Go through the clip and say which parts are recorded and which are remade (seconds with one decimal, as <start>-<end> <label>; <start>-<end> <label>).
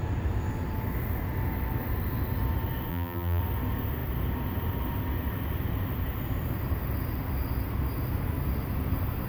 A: 0.0-2.9 recorded; 2.9-3.4 remade; 3.4-9.3 recorded